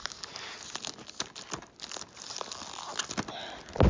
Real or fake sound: real